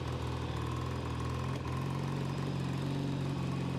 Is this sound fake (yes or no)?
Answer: no